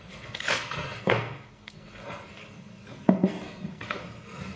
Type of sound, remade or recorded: remade